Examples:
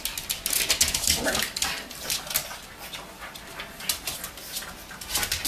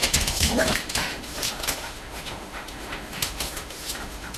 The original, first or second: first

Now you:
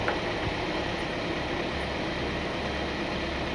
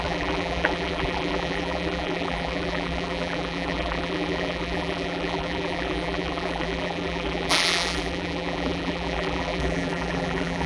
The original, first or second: first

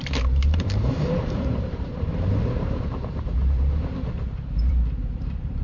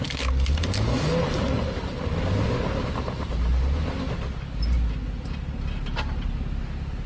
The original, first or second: second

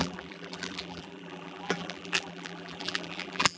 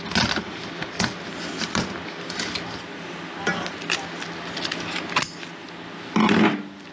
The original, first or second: second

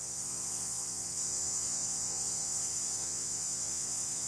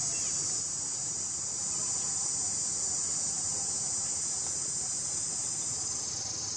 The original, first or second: second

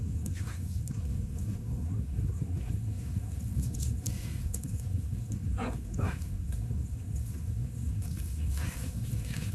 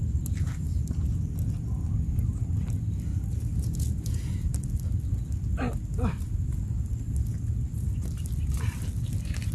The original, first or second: second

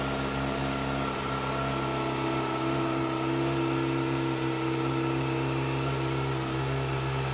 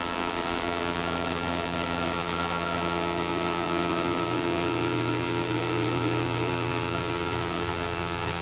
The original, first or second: first